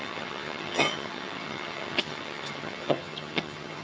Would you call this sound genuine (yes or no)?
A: no